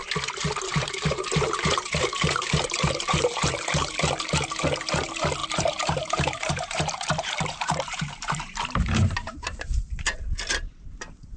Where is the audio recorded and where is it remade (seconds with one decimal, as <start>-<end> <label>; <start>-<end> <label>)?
0.0-0.7 recorded; 0.7-3.9 remade; 3.9-5.4 recorded; 5.4-9.8 remade; 9.8-11.4 recorded